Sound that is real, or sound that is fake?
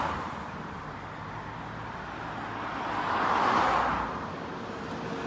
real